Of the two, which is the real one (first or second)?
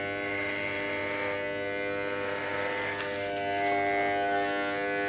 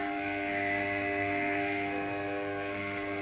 first